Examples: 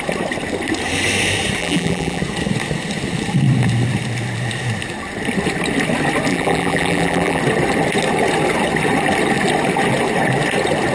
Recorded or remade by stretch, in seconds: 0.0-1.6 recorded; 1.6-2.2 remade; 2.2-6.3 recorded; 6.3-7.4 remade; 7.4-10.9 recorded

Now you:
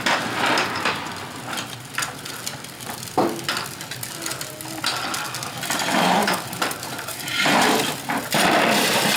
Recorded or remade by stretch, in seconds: 0.0-6.2 recorded; 6.2-7.5 remade; 7.5-9.2 recorded

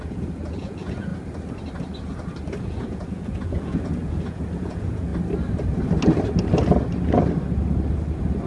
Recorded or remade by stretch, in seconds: 0.0-1.1 remade; 1.1-2.6 recorded; 2.6-5.1 remade; 5.1-8.5 recorded

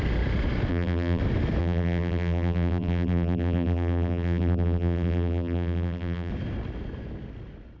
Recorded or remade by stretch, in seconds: 0.0-0.7 recorded; 0.7-1.2 remade; 1.2-1.6 recorded; 1.6-6.3 remade; 6.3-7.8 recorded

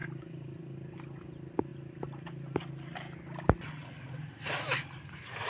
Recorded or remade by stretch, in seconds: 0.0-5.5 recorded

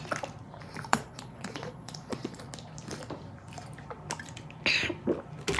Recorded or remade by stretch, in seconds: 0.0-0.9 recorded; 0.9-2.4 remade; 2.4-5.6 recorded